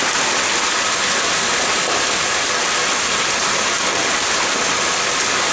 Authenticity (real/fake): real